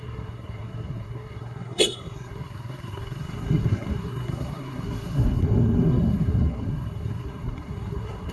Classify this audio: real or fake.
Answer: fake